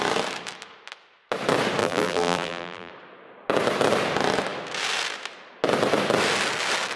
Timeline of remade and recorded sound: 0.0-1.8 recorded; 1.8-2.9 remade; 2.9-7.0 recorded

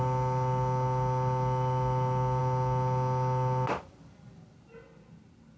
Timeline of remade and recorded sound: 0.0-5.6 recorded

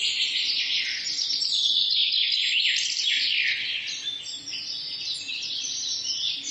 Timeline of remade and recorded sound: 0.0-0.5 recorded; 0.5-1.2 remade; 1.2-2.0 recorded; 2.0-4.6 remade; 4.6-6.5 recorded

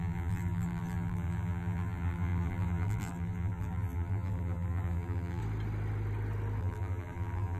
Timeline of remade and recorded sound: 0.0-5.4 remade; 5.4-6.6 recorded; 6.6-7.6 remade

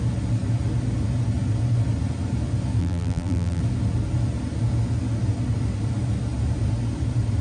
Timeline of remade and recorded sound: 0.0-2.8 recorded; 2.8-3.6 remade; 3.6-7.4 recorded

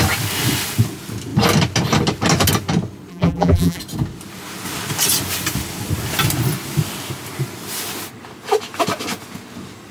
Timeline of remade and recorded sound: 0.0-3.1 recorded; 3.1-3.8 remade; 3.8-9.9 recorded

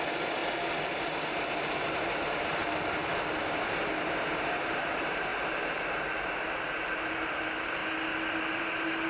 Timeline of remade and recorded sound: 0.0-0.4 remade; 0.4-1.8 recorded; 1.8-2.6 remade; 2.6-3.4 recorded; 3.4-5.3 remade; 5.3-7.0 recorded; 7.0-7.8 remade; 7.8-8.6 recorded; 8.6-9.1 remade